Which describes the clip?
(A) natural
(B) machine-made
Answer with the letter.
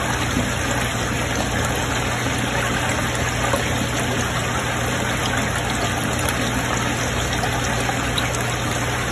A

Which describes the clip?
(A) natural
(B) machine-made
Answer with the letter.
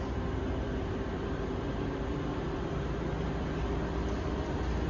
B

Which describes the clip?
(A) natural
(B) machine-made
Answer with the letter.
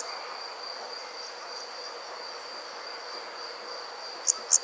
A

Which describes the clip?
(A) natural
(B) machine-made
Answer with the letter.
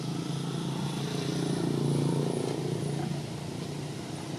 A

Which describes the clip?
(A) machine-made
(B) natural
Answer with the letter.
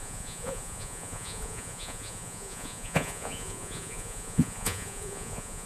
A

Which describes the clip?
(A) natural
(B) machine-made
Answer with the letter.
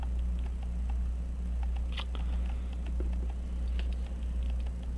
A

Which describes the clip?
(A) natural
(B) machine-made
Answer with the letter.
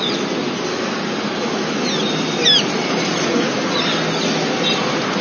A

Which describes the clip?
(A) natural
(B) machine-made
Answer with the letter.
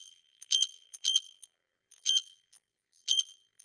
B